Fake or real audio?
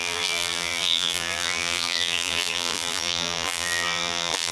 fake